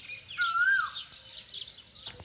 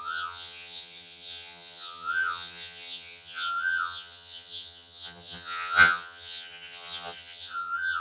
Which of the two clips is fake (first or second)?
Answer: second